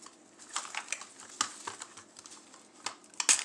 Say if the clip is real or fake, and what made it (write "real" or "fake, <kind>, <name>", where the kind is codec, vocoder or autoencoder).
real